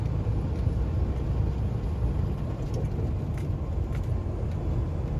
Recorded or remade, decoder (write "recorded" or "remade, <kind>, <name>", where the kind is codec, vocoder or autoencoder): recorded